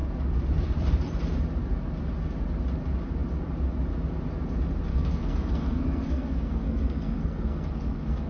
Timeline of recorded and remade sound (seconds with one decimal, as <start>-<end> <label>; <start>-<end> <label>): 0.0-4.9 recorded; 4.9-8.3 remade